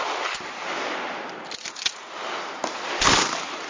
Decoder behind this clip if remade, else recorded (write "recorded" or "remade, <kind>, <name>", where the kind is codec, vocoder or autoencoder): recorded